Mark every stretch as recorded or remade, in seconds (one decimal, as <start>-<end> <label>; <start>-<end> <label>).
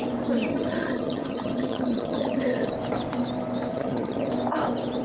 0.0-0.5 recorded; 0.5-2.7 remade; 2.7-3.7 recorded; 3.7-4.3 remade; 4.3-5.0 recorded